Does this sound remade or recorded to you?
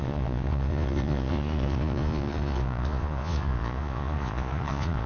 remade